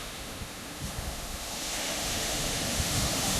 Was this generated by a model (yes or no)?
yes